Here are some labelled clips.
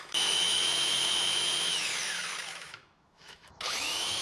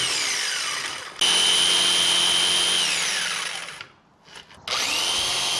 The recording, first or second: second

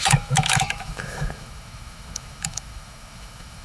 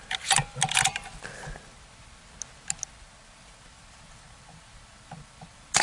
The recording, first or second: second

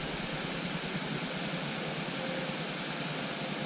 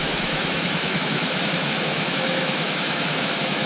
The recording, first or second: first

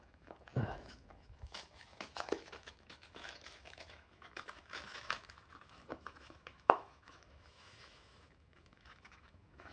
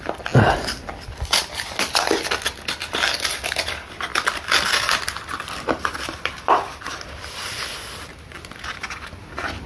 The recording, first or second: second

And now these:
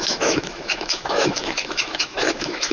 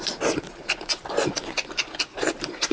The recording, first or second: second